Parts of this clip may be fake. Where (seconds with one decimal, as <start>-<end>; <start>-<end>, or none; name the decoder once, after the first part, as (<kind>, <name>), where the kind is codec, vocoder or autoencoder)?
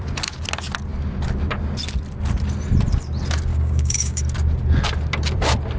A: 3.5-4.2 (codec, DAC)